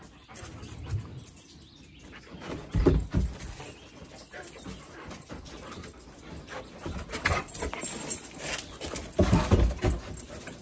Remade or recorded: recorded